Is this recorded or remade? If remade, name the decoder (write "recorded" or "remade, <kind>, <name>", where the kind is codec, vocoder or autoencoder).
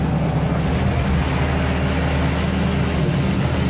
recorded